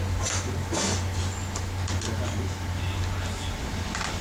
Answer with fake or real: real